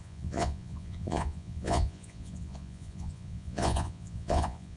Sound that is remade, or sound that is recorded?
remade